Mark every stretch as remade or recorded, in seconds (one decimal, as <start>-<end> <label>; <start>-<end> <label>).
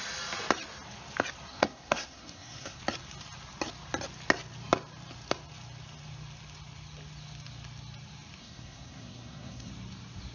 0.0-1.5 recorded; 1.5-2.8 remade; 2.8-8.4 recorded; 8.4-9.7 remade; 9.7-10.3 recorded